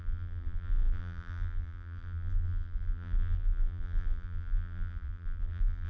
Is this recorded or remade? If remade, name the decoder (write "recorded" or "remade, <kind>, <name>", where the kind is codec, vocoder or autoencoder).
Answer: remade, vocoder, BigVGAN v2